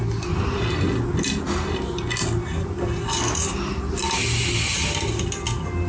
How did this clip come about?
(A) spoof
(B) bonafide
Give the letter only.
B